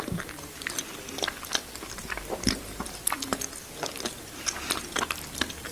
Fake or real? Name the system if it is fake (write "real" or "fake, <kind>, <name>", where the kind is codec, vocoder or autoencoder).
fake, vocoder, BigVGAN v2